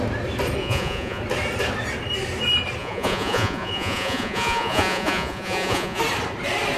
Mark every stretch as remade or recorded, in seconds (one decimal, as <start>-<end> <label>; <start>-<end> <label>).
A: 0.0-0.6 recorded; 0.6-1.2 remade; 1.2-2.8 recorded; 2.8-6.0 remade; 6.0-6.8 recorded